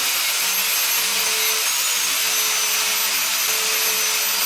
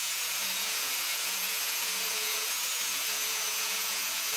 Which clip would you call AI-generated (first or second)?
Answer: second